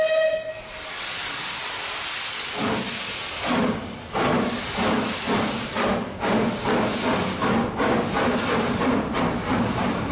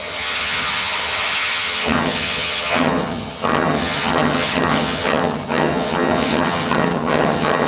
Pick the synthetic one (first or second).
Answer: second